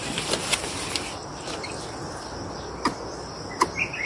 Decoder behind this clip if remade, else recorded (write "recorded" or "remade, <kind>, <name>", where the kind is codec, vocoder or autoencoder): recorded